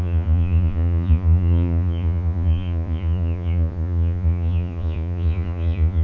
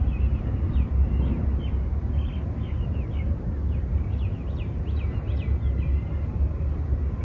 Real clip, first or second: second